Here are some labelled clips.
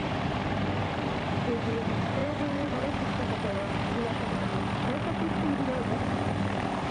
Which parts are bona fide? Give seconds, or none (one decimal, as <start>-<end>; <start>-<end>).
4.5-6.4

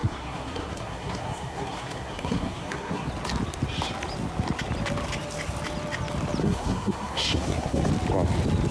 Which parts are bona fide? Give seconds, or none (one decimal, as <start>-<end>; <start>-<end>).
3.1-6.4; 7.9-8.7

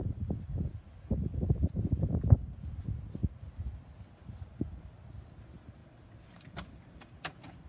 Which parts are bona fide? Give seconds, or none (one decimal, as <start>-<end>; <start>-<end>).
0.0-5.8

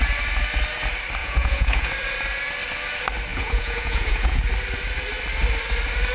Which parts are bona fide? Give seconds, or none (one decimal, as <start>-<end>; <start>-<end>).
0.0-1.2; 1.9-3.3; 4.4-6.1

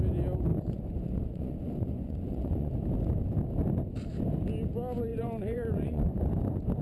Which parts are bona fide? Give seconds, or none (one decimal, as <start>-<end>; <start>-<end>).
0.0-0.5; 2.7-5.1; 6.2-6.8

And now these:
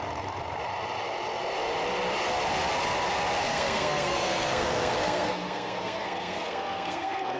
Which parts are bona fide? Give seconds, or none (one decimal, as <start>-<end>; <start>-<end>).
0.0-3.4

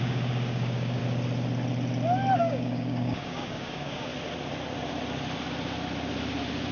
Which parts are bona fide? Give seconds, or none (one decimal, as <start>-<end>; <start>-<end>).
1.0-2.4; 4.1-6.7